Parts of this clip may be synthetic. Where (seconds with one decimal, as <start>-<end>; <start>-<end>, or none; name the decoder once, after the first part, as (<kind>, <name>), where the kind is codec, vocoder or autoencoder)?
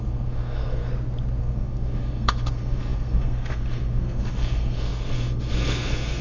0.0-0.9 (codec, SNAC); 1.4-6.2